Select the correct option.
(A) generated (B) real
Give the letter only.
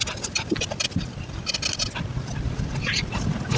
B